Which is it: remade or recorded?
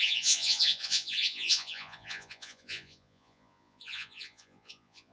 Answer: remade